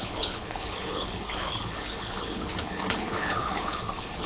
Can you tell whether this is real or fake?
fake